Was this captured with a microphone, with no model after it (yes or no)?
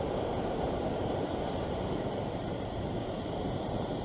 no